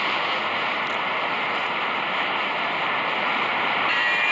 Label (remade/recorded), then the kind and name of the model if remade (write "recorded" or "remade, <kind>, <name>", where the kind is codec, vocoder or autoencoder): recorded